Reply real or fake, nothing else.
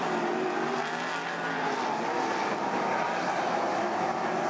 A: real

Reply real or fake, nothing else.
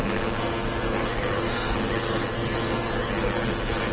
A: fake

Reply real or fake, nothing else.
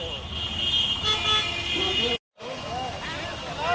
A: real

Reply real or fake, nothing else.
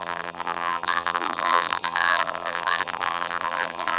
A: fake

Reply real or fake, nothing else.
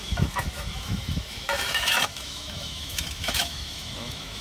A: fake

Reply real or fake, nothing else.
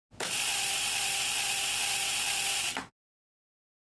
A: real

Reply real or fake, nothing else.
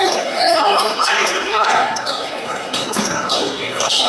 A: fake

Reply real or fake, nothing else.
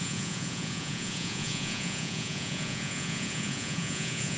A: fake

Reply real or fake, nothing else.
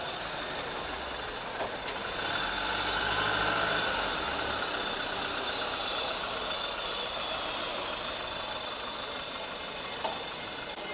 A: real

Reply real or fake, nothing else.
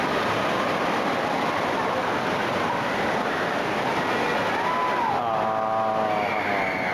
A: real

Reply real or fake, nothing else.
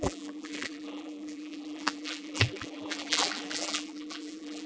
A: fake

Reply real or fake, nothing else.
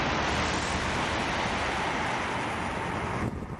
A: real